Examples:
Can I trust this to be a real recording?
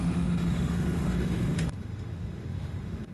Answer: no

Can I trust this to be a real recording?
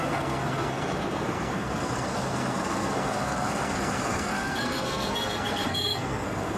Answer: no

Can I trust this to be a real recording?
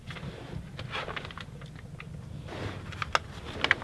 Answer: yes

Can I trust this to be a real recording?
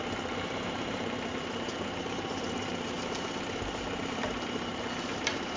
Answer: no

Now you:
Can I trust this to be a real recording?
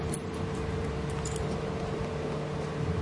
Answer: yes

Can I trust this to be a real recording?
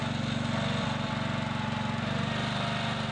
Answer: yes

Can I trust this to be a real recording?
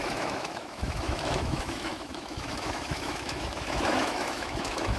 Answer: no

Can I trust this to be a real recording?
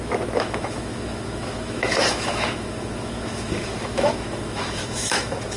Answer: no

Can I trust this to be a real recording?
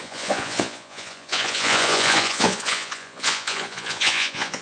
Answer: no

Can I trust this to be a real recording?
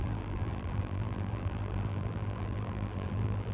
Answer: no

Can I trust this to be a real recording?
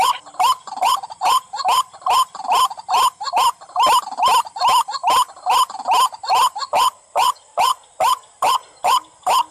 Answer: yes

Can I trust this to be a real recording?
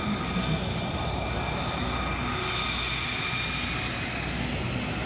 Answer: yes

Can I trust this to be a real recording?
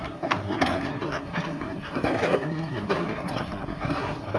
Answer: no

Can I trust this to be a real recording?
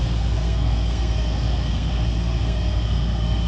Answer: no